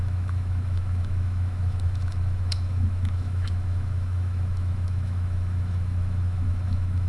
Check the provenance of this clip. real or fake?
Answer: fake